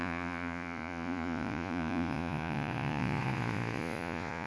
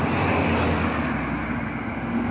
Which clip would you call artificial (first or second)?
first